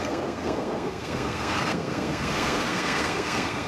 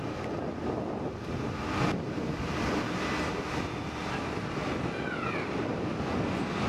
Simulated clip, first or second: first